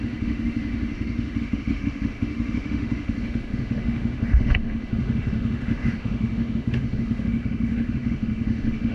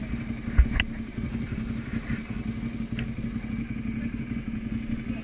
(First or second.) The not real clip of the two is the first